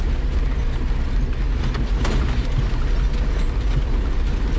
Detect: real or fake real